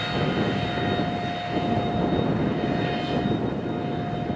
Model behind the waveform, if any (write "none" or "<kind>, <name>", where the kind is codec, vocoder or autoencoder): none